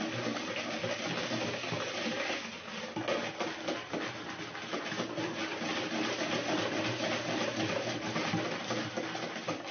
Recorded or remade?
recorded